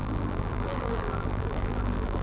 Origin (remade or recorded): remade